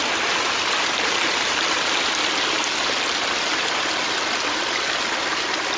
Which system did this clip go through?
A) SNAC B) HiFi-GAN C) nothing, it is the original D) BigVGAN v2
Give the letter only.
C